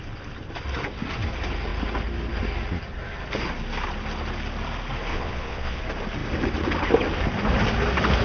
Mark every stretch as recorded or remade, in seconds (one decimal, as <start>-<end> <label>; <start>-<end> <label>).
0.0-5.1 recorded; 5.1-5.8 remade; 5.8-8.2 recorded